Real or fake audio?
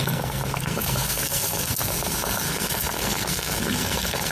fake